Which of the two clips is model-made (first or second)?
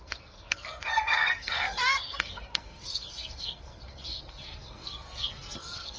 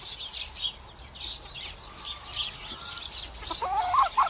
first